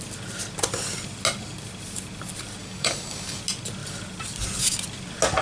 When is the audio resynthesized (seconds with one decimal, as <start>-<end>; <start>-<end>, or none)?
2.6-3.4